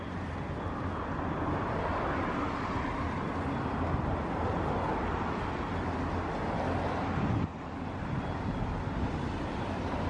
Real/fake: real